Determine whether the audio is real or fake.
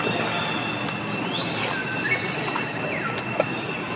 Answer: real